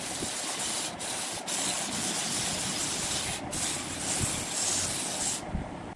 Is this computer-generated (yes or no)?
no